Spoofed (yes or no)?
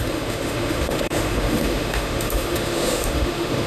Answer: yes